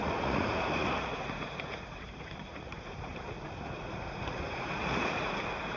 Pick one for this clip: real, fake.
fake